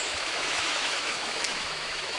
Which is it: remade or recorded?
remade